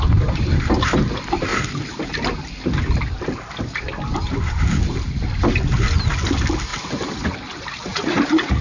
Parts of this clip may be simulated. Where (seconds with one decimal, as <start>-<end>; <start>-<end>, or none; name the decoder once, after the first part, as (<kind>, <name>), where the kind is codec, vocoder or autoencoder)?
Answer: 7.9-8.6 (vocoder, Vocos)